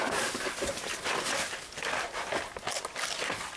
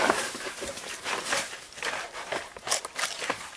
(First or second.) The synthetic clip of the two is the second